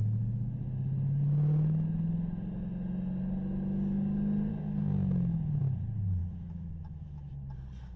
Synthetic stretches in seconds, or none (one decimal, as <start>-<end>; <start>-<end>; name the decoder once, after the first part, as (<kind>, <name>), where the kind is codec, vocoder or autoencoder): 4.5-5.6 (autoencoder, DAC-VAE); 6.2-7.3